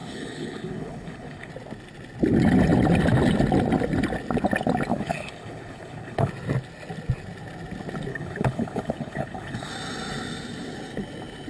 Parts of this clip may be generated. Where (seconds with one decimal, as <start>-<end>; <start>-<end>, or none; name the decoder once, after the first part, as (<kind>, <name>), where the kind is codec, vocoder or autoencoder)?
0.0-1.5 (codec, HILCodec); 4.9-6.3; 8.1-9.7